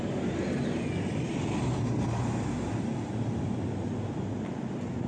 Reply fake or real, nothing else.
real